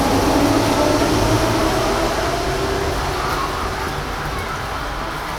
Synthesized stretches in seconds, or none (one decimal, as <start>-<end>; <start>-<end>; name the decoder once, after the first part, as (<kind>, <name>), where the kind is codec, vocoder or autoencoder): none